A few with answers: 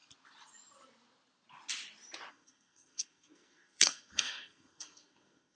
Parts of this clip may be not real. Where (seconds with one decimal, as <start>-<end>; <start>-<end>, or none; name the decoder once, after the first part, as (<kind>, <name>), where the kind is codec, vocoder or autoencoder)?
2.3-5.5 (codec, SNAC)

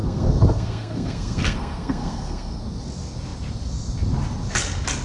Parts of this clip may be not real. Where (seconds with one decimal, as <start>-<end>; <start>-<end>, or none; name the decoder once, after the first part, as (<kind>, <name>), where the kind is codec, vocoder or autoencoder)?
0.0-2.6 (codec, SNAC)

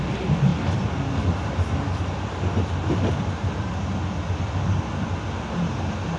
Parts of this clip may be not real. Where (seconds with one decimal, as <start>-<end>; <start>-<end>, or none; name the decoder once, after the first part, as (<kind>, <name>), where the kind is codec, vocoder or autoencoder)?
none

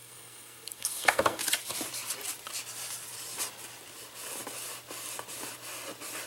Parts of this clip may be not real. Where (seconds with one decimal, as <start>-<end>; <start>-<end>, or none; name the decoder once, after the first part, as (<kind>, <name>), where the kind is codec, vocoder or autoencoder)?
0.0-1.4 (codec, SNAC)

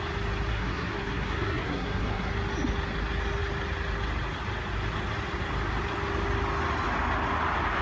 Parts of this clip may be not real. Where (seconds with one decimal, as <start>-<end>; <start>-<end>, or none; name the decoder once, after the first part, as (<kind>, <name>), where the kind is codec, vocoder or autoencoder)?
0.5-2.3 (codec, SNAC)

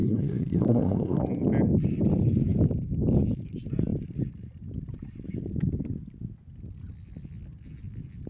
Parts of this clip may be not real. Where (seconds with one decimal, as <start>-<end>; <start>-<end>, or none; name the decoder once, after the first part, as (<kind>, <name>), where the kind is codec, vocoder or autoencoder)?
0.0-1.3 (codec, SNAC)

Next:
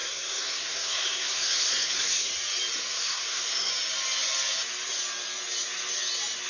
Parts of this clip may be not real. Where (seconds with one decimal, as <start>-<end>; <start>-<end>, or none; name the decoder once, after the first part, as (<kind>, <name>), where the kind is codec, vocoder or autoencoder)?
0.0-2.3 (codec, SNAC); 2.9-3.7

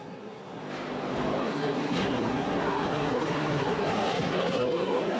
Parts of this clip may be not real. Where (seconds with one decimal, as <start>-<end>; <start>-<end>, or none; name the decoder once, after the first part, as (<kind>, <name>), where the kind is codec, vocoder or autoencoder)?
0.0-0.6 (codec, SNAC); 1.4-5.2